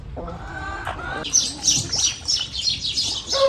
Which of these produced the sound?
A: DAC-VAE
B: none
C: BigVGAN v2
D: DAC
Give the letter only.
B